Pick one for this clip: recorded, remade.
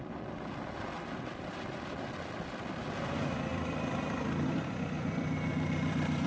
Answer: remade